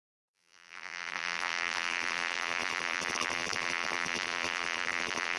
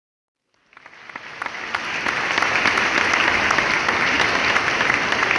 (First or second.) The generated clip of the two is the first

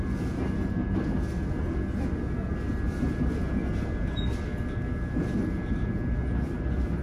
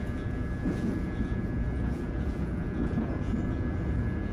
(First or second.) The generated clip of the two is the second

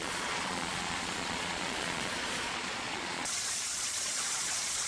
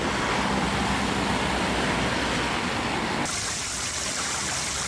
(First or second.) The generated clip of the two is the first